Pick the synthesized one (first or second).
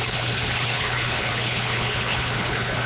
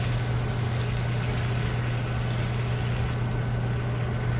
first